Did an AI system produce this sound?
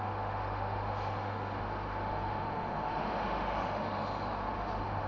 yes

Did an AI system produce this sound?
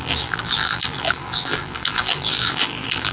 yes